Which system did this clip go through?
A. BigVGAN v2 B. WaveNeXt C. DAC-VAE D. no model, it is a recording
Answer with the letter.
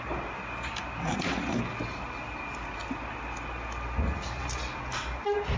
D